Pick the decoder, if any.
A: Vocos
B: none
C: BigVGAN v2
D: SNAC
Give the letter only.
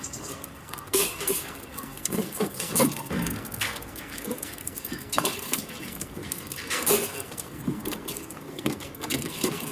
D